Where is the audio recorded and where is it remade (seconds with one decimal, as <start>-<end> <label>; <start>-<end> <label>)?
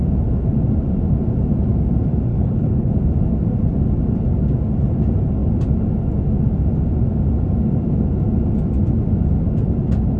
0.0-2.3 recorded; 2.3-2.9 remade; 2.9-10.2 recorded